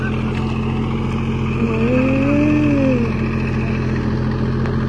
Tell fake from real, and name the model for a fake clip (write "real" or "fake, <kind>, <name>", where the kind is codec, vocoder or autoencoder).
real